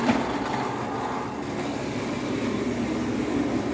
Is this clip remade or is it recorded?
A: recorded